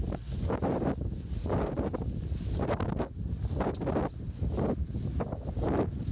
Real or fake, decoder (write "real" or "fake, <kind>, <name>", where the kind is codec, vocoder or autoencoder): real